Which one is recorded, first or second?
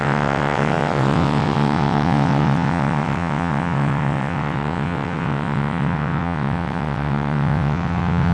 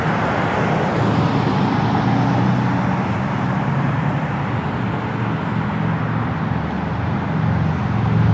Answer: second